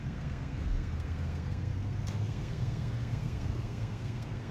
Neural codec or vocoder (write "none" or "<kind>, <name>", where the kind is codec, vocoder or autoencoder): codec, SNAC